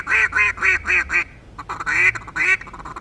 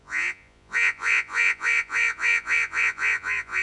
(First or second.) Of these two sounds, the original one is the first